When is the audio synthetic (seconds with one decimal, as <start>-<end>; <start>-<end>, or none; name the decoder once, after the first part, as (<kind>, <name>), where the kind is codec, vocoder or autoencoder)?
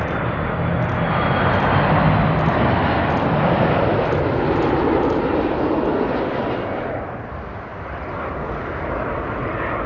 none